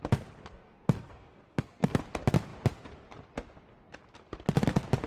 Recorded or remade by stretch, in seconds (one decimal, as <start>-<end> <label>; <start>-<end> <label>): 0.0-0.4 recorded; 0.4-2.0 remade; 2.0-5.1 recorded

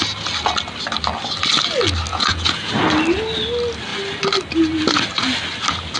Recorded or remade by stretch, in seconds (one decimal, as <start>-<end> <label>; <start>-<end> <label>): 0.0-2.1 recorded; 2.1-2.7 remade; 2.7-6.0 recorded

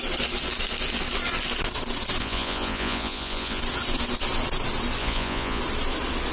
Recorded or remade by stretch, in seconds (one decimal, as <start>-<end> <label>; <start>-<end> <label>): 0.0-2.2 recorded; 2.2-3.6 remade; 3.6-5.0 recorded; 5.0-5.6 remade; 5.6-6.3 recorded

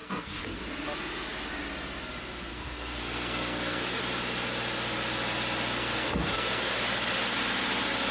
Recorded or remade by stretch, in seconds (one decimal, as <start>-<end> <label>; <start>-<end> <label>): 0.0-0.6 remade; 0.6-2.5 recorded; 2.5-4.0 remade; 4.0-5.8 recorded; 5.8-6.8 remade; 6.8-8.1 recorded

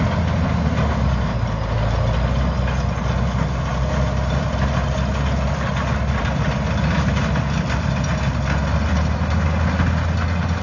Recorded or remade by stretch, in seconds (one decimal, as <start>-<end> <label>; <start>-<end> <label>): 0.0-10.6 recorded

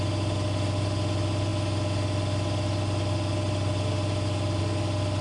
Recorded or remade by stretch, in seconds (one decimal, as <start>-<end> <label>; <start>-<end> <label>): 0.0-5.2 recorded